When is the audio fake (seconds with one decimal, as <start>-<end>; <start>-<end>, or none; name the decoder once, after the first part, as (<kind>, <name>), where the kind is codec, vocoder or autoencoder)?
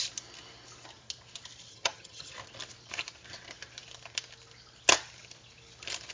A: 1.7-2.3 (vocoder, HiFi-GAN)